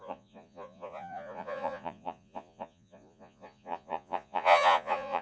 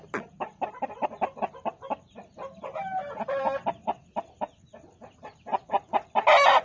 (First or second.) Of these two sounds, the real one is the second